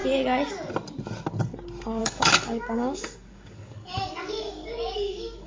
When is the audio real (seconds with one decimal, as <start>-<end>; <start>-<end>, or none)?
0.0-2.0